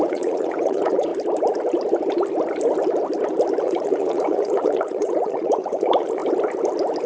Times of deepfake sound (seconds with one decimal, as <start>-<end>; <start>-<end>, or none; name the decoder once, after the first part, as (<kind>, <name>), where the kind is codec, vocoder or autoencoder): 0.0-1.1 (vocoder, Vocos); 3.6-6.2